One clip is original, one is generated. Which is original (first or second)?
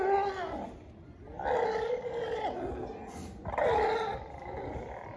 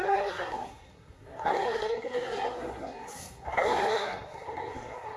first